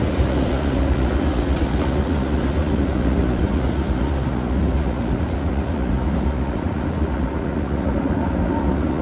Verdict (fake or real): fake